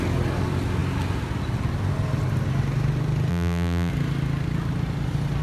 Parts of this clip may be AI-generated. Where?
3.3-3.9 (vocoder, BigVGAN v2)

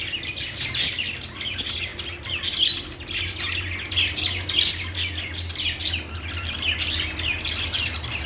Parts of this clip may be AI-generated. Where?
none

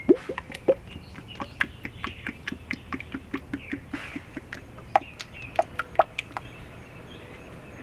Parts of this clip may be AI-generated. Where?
none

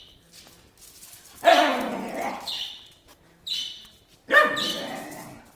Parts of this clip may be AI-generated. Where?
none

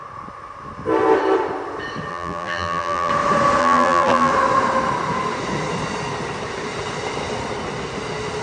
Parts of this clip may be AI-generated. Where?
2.1-3.1 (vocoder, BigVGAN v2); 3.6-4.3

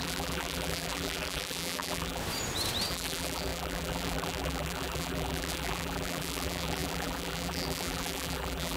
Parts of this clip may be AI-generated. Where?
0.0-2.2 (vocoder, BigVGAN v2); 2.9-8.8